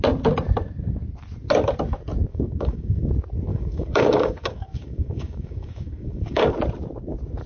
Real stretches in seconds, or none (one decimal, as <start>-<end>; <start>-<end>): 0.0-2.3; 3.1-3.5; 6.5-7.5